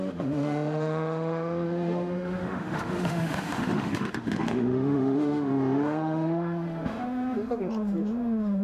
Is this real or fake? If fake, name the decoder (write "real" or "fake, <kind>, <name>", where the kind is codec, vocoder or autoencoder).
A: fake, autoencoder, DAC-VAE